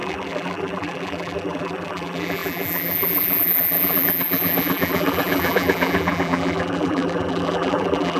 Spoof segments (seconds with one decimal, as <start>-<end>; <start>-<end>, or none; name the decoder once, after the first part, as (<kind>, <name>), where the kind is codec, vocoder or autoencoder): 0.0-8.2 (vocoder, BigVGAN v2)